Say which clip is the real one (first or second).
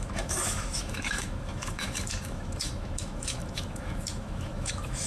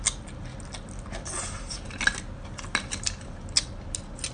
second